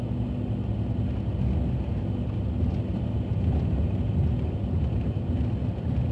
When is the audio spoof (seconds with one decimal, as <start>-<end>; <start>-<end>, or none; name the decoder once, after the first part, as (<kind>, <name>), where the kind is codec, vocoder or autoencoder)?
none